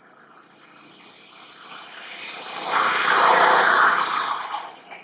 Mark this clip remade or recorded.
recorded